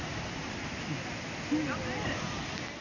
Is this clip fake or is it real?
real